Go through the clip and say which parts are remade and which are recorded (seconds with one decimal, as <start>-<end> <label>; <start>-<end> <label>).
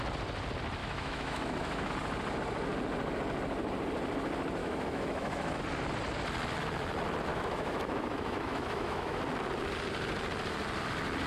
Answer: 0.0-0.8 recorded; 0.8-1.9 remade; 1.9-4.6 recorded; 4.6-5.6 remade; 5.6-7.3 recorded; 7.3-9.2 remade; 9.2-11.3 recorded